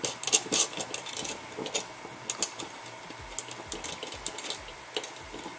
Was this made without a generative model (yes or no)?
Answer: yes